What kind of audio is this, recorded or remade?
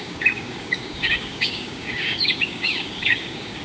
remade